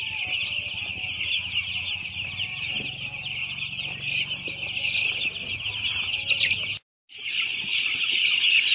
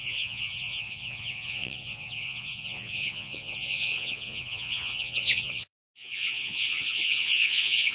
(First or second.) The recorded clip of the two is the first